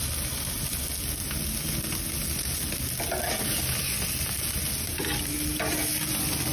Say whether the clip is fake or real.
real